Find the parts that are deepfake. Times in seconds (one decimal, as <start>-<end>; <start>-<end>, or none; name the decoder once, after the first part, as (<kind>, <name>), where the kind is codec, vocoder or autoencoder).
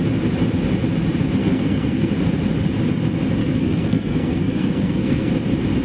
1.4-2.1 (codec, SNAC); 3.4-5.3